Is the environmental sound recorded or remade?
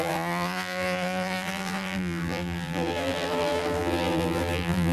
remade